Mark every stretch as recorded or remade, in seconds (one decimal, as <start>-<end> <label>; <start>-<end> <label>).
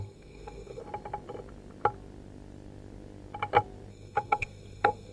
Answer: 0.0-0.8 remade; 0.8-3.9 recorded; 3.9-5.1 remade